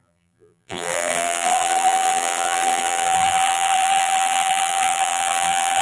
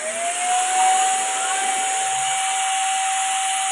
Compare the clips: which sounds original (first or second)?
second